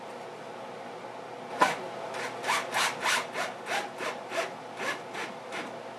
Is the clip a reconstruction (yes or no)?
no